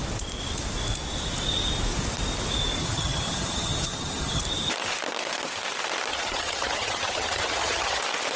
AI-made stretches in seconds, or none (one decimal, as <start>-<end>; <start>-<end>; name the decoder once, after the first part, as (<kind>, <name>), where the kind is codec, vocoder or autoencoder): 2.8-4.4 (vocoder, HiFi-GAN); 6.1-8.0